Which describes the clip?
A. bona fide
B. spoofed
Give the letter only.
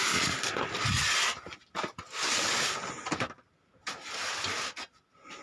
A